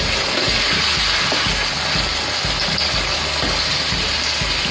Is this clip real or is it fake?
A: real